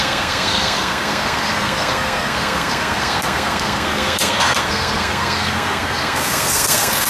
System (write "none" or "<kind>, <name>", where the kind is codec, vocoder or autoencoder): codec, SNAC